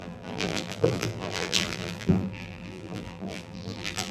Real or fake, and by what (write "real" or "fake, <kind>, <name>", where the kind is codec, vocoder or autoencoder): fake, vocoder, BigVGAN v2